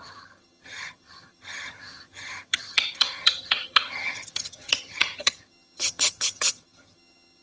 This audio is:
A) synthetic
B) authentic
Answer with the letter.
A